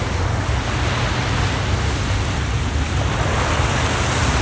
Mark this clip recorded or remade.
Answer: recorded